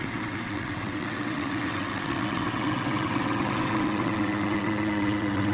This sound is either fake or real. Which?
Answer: fake